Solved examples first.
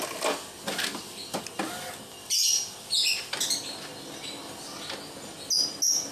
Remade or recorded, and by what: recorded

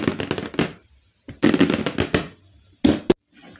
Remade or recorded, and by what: recorded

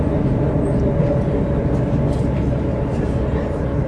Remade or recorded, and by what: recorded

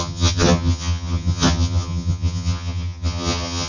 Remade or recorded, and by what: remade, vocoder, HiFi-GAN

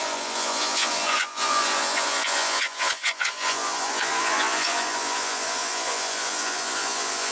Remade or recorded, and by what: remade, vocoder, Vocos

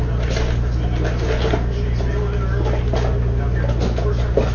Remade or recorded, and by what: recorded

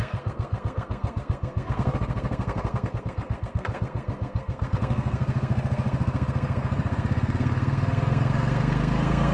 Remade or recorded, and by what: remade, codec, SNAC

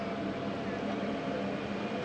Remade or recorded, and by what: recorded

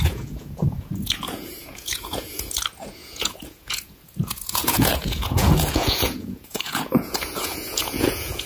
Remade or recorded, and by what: remade, vocoder, Vocos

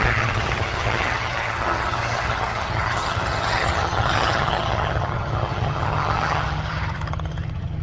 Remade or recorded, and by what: remade, vocoder, HiFi-GAN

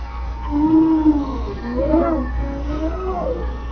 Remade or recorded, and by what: remade, codec, SNAC